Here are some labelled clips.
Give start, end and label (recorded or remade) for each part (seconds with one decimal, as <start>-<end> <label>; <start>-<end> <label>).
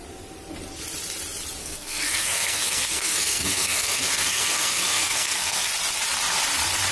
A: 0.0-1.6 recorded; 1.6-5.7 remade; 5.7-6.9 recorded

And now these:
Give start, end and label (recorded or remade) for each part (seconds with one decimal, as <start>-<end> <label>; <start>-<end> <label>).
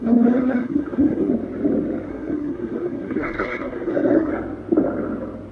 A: 0.0-1.3 remade; 1.3-2.1 recorded; 2.1-4.3 remade; 4.3-5.5 recorded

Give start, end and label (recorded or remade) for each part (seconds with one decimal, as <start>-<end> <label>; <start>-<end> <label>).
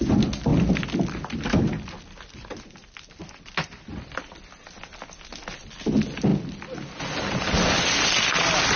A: 0.0-8.8 recorded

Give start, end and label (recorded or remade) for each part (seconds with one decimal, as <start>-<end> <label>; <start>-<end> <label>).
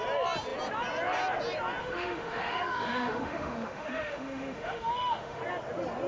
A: 0.0-1.8 recorded; 1.8-5.4 remade; 5.4-6.1 recorded